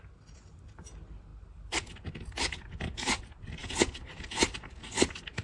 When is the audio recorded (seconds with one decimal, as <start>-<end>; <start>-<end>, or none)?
0.0-5.4